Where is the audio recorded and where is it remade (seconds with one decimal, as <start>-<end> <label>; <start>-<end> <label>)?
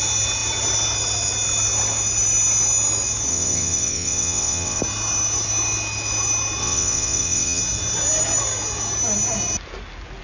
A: 0.0-3.3 recorded; 3.3-4.8 remade; 4.8-6.6 recorded; 6.6-7.6 remade; 7.6-10.2 recorded